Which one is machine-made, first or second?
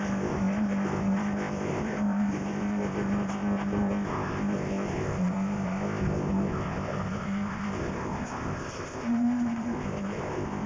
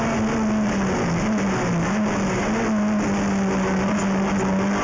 first